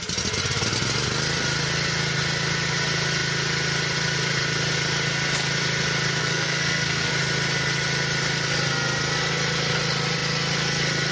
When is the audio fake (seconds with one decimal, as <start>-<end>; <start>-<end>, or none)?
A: 6.2-7.1